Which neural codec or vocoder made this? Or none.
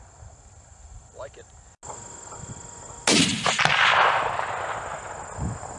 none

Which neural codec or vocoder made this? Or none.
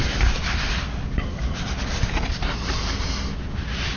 none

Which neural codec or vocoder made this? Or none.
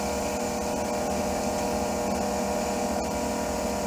none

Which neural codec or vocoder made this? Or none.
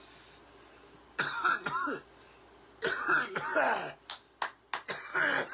none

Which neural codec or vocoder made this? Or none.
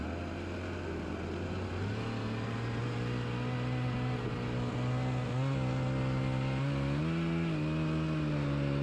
none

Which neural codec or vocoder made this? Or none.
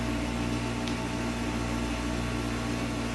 none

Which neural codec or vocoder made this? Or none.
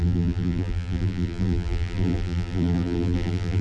vocoder, BigVGAN v2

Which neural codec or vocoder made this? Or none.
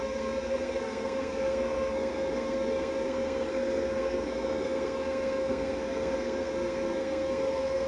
codec, SNAC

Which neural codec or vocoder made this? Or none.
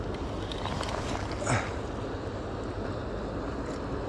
none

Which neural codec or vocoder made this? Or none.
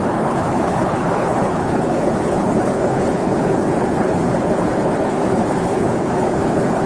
codec, HILCodec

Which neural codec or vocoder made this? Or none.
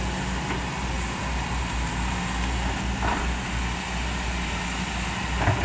none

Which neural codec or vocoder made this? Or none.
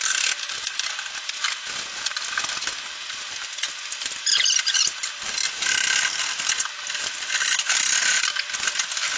none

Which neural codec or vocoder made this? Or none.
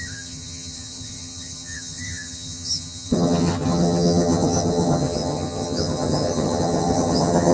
vocoder, HiFi-GAN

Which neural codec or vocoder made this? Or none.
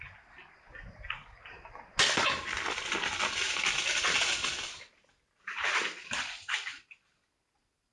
none